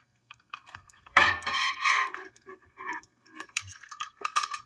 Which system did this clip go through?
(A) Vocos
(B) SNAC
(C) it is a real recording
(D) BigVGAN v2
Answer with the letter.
B